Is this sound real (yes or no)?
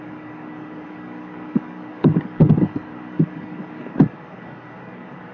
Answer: no